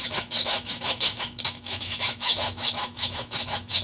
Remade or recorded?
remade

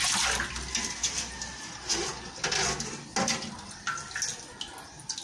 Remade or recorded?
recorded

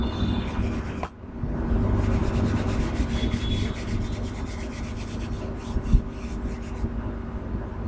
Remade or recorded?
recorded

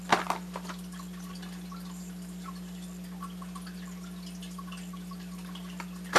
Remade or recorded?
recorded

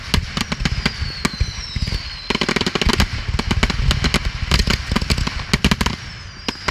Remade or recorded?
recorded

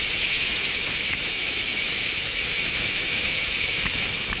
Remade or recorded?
remade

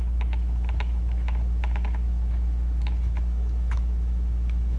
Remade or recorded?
remade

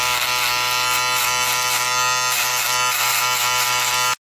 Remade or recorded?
recorded